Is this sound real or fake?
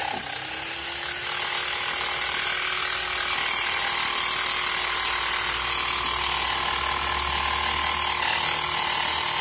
real